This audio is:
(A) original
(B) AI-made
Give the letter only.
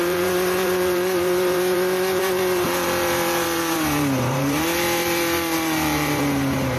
B